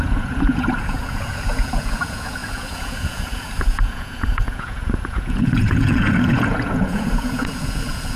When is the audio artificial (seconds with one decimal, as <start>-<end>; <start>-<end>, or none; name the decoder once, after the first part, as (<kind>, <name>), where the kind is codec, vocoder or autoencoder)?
0.0-8.2 (vocoder, Vocos)